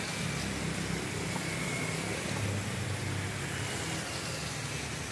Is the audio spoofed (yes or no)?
no